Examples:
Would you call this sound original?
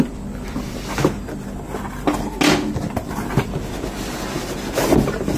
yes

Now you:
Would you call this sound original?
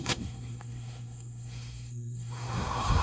no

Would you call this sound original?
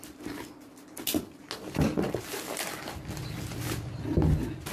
yes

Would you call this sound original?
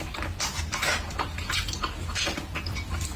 yes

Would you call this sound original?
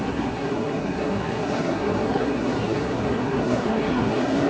no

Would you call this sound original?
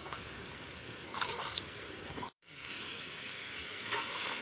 no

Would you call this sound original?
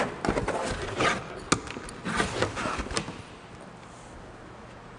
yes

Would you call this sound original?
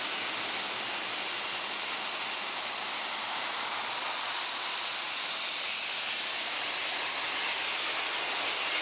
yes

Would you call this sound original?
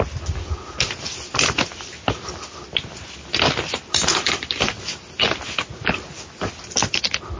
yes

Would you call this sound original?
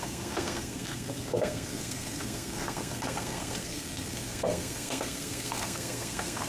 no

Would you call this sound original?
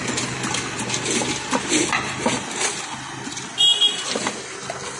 yes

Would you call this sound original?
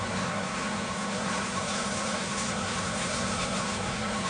no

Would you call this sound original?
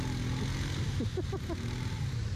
yes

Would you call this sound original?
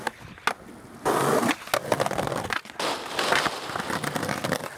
yes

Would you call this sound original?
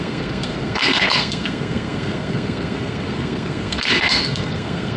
no